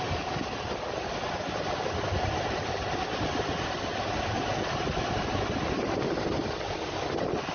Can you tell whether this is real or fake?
real